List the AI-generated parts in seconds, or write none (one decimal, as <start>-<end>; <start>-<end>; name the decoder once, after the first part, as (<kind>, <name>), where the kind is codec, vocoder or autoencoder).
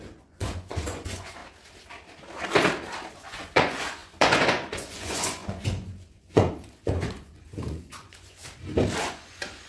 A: 0.0-1.4 (vocoder, Vocos); 3.1-8.4; 9.0-9.7